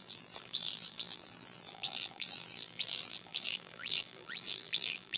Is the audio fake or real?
fake